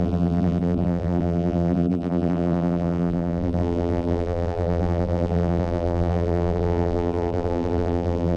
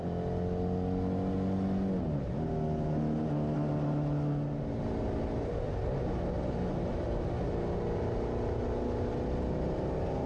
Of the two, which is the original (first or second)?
second